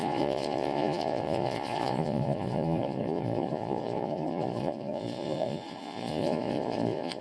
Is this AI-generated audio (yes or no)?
yes